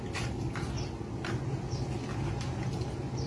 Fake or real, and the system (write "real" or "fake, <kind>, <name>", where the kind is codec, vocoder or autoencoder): real